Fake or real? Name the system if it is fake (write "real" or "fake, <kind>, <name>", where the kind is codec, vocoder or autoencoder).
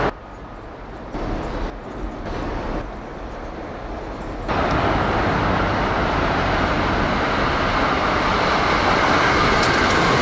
real